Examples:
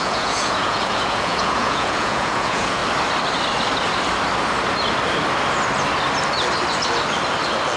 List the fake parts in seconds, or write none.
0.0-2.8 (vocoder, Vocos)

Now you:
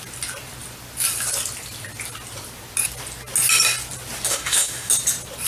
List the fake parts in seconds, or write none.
4.3-4.9 (autoencoder, DAC-VAE)

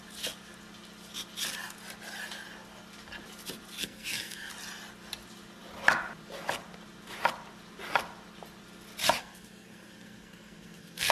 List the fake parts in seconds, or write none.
3.8-4.5 (codec, SNAC); 9.2-11.1

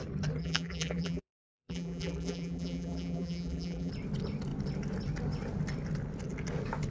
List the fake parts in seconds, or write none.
0.4-3.9 (vocoder, BigVGAN v2)

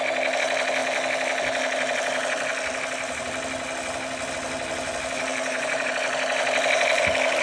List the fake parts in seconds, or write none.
5.3-5.9 (vocoder, BigVGAN v2)

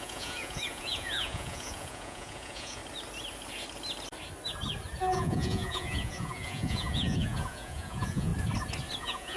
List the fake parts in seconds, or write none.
0.0-2.8 (vocoder, Vocos); 5.0-8.3; 9.0-9.4

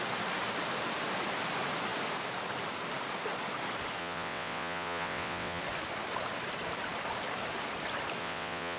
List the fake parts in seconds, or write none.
4.0-5.6 (vocoder, WaveNeXt); 8.2-8.8